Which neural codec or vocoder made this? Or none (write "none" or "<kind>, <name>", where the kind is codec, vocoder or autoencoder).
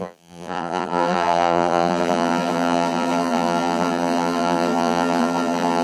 vocoder, BigVGAN v2